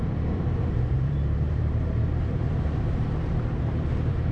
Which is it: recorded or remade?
remade